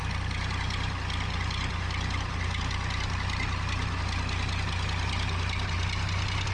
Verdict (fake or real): real